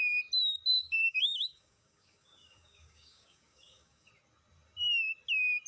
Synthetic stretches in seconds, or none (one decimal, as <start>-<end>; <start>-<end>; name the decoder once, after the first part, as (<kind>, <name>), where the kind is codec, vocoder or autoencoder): 0.7-4.1 (codec, DAC)